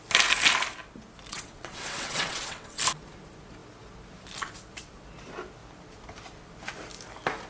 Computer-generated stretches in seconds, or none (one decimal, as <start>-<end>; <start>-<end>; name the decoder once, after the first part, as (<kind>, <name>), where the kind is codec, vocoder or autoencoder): 1.3-2.8 (vocoder, WaveNeXt)